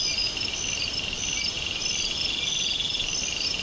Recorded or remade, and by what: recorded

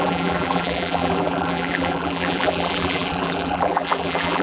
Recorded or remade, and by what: remade, vocoder, BigVGAN v2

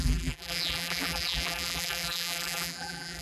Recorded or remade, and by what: remade, vocoder, BigVGAN v2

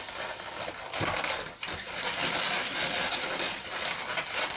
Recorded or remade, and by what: recorded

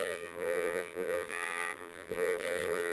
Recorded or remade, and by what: remade, vocoder, BigVGAN v2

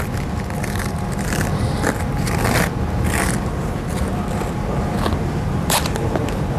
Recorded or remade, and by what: remade, vocoder, BigVGAN v2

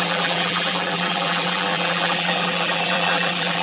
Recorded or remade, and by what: remade, vocoder, BigVGAN v2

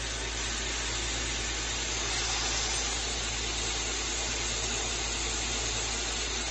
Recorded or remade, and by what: recorded